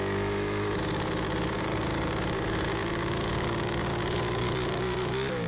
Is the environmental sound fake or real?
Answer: fake